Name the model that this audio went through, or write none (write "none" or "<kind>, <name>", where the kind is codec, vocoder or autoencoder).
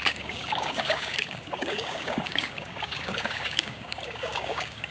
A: codec, DAC